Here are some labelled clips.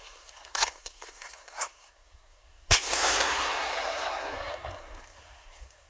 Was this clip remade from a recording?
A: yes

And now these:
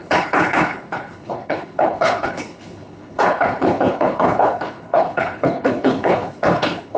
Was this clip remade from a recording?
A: yes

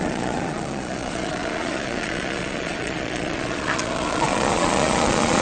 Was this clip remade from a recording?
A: yes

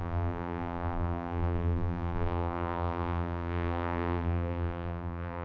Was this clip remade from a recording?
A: yes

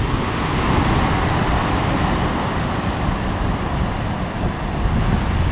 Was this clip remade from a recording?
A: no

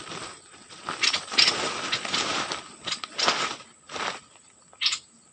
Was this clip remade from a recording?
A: no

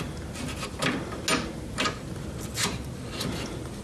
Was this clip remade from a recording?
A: no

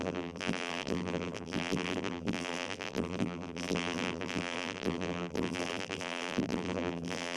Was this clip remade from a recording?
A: yes